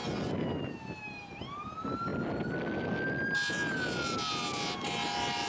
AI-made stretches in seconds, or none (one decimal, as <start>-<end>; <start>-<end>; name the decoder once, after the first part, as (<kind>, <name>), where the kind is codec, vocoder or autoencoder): none